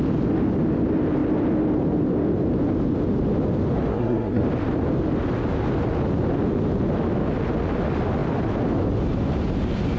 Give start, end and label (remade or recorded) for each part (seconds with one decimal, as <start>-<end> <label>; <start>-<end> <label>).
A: 0.0-3.9 recorded; 3.9-4.4 remade; 4.4-10.0 recorded